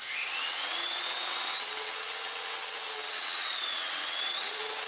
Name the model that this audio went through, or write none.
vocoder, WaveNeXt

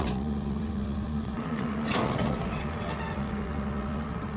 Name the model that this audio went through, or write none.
vocoder, WaveNeXt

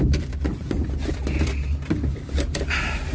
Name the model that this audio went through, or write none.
none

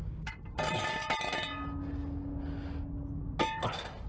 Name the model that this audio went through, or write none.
none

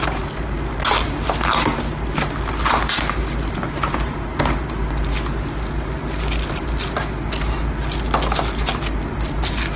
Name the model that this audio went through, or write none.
none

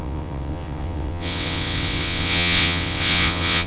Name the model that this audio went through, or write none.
vocoder, WaveNeXt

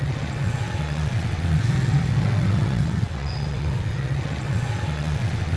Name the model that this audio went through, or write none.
vocoder, WaveNeXt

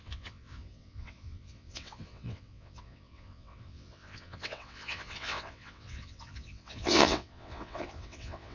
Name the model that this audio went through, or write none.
vocoder, WaveNeXt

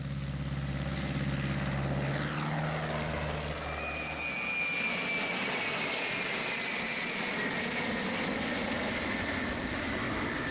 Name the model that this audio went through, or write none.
none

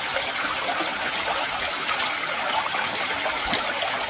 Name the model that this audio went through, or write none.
none